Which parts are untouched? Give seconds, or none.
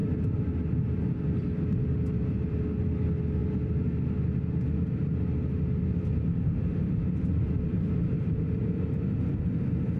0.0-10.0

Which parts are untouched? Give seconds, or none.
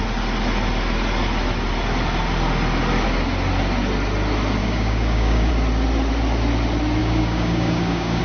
0.0-4.6; 5.5-7.0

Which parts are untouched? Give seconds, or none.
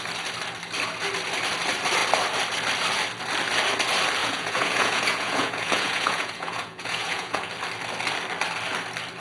0.0-4.2; 7.5-9.2